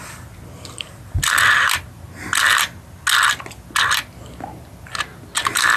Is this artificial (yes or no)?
no